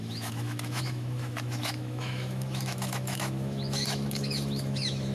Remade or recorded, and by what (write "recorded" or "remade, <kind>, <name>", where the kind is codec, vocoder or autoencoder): remade, autoencoder, DAC-VAE